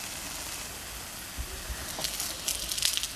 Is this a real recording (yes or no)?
yes